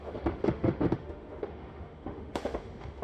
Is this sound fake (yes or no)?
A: yes